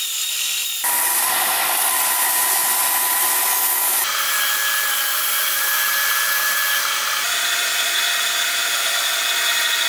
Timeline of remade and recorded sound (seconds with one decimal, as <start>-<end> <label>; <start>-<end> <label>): 0.0-9.9 recorded